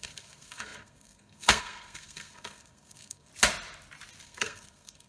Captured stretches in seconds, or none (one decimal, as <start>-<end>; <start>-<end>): 3.3-4.2